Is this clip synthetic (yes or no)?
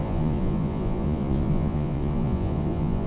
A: yes